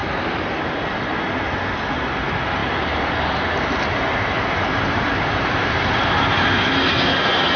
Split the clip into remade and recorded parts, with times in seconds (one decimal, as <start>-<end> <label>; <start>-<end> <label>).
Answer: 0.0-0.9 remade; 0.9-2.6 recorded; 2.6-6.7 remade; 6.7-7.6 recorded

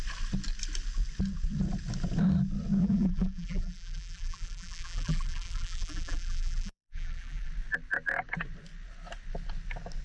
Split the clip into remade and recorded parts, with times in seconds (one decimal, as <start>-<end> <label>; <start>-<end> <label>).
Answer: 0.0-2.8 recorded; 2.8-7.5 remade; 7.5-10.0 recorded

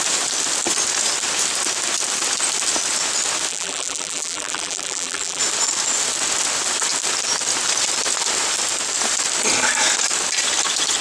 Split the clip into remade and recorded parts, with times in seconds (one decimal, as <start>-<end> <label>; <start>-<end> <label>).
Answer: 0.0-3.5 recorded; 3.5-5.4 remade; 5.4-11.0 recorded